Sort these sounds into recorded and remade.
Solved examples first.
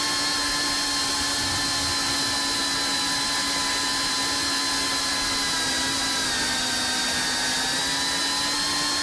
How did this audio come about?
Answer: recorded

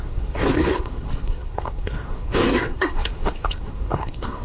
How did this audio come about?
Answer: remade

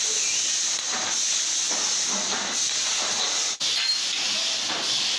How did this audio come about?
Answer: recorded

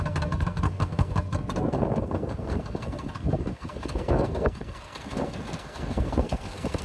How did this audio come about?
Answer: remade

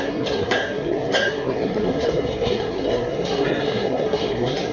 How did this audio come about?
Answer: remade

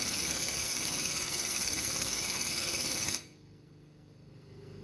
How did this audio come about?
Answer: remade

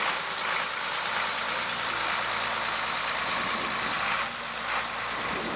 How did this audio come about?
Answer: recorded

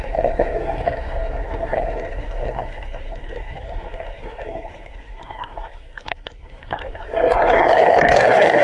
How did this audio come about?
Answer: remade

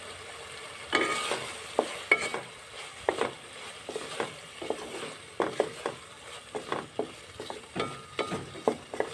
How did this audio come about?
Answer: recorded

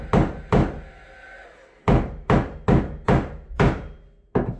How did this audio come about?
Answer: recorded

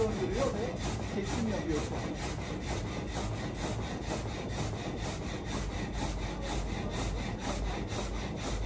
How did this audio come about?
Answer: recorded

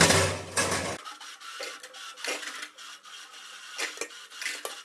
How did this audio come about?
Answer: recorded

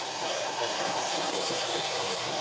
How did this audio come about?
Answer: remade